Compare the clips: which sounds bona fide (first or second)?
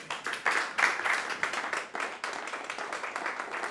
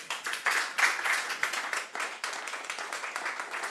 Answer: first